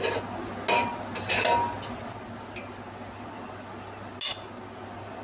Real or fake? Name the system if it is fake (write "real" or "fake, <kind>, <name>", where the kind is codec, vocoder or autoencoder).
real